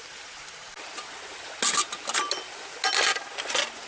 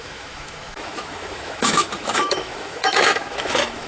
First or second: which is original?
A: first